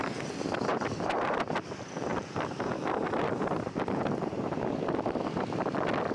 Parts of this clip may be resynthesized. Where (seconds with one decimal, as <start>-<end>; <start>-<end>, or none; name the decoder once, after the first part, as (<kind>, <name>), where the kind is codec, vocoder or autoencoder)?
0.7-1.4 (vocoder, BigVGAN v2); 2.1-4.4